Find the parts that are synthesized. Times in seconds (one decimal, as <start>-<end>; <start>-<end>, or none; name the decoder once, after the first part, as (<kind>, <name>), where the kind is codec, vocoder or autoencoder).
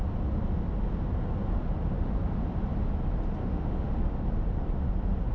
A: 3.4-3.9 (autoencoder, DAC-VAE)